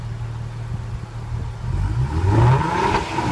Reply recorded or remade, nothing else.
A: recorded